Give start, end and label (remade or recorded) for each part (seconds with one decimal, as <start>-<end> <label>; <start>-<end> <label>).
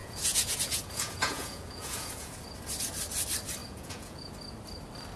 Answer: 0.0-2.3 remade; 2.3-3.6 recorded; 3.6-4.3 remade; 4.3-5.2 recorded